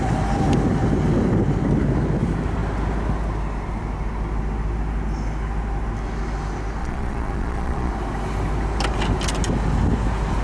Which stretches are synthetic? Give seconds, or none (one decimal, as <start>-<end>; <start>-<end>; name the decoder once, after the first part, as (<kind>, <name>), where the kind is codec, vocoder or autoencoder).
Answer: 6.8-7.9 (vocoder, Vocos)